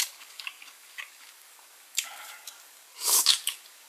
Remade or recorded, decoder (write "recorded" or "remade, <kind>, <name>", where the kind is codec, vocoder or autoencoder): remade, codec, DAC